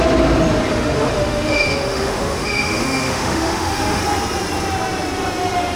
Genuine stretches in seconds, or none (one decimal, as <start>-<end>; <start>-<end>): 0.0-0.7; 4.0-5.8